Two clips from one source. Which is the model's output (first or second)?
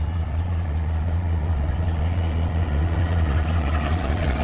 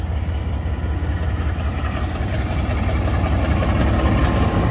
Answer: first